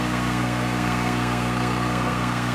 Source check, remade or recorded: remade